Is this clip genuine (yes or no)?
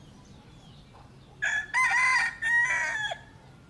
yes